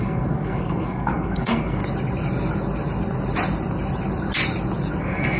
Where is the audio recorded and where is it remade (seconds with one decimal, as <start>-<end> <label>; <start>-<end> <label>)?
0.0-1.8 remade; 1.8-5.0 recorded; 5.0-5.4 remade